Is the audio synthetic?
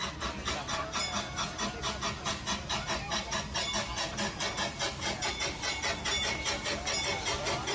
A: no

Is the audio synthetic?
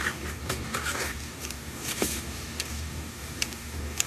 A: yes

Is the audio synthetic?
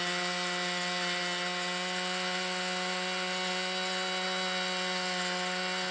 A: no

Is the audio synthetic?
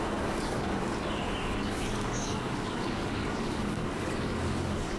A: yes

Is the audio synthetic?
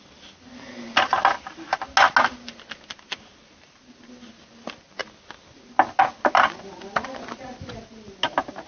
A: no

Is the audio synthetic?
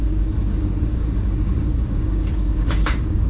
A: yes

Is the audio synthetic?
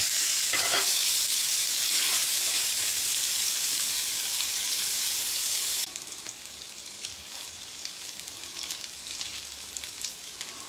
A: yes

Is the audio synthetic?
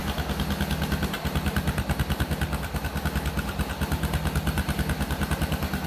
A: no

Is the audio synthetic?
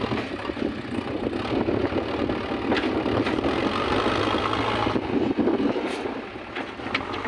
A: no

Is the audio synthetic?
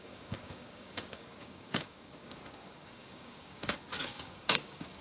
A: yes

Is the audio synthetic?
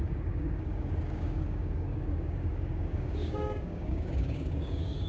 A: yes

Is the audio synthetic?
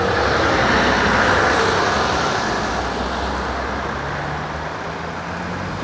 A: no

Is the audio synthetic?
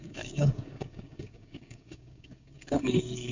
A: yes